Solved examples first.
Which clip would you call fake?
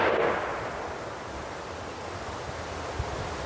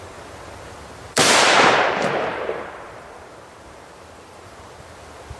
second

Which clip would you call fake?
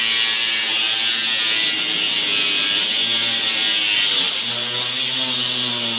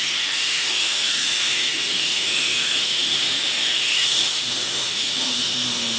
second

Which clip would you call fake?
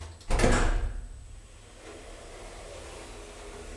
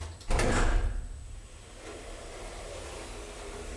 second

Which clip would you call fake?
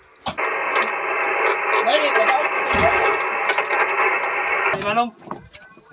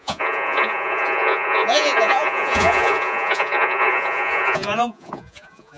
second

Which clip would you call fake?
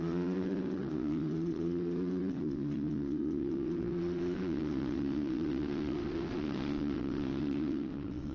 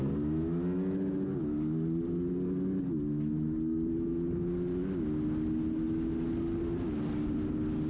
first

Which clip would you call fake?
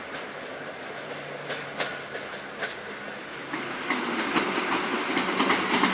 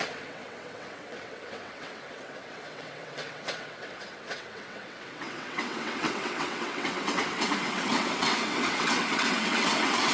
second